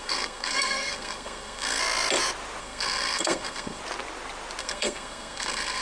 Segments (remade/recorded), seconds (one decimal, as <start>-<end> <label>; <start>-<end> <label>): 0.0-1.8 remade; 1.8-2.6 recorded; 2.6-3.8 remade; 3.8-4.6 recorded; 4.6-5.8 remade